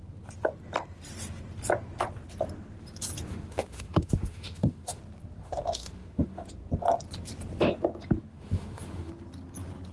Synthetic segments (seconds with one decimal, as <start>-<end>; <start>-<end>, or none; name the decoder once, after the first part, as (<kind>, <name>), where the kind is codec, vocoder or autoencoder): 3.3-5.0 (autoencoder, DAC-VAE); 5.4-6.5; 8.3-9.1